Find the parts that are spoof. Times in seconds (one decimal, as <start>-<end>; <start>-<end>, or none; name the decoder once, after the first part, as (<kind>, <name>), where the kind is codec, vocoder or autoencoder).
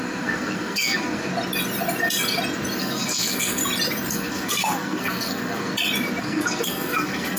0.0-1.3 (codec, SNAC); 2.8-3.6; 4.1-5.7; 6.2-7.4